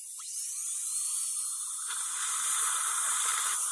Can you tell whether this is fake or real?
real